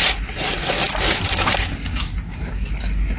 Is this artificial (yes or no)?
no